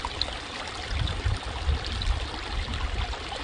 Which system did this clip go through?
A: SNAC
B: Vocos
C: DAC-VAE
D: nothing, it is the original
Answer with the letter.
D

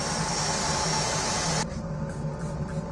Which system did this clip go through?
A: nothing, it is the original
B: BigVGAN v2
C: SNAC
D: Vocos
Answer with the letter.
A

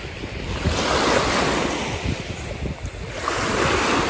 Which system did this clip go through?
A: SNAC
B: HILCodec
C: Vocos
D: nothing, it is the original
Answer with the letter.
D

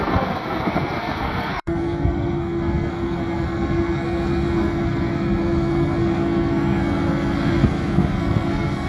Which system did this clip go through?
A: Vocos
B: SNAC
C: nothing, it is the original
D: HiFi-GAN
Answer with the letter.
B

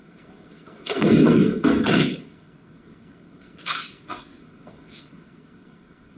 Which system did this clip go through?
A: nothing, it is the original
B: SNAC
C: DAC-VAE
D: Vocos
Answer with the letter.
B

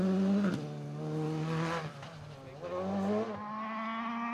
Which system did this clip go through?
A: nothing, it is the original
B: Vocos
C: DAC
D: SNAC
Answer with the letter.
A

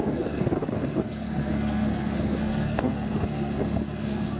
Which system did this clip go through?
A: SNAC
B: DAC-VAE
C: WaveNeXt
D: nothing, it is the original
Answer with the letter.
A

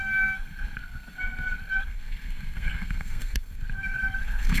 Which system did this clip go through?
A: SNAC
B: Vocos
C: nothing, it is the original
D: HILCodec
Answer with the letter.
A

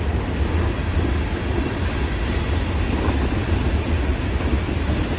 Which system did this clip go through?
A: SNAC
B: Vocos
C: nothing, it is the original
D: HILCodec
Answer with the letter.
C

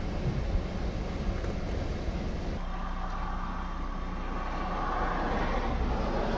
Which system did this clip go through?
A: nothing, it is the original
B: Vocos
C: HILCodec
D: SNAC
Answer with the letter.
A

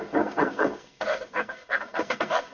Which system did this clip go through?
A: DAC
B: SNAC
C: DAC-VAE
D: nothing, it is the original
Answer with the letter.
B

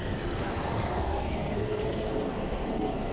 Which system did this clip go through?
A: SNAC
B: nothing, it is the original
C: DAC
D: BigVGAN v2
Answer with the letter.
A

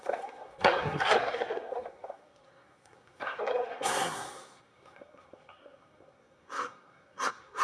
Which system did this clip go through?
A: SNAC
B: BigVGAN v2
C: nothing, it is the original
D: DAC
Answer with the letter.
A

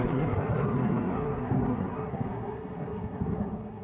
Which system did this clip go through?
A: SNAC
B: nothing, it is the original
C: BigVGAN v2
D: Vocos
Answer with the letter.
A